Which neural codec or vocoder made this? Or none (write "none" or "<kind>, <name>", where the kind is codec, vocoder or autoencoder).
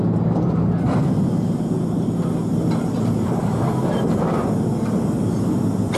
none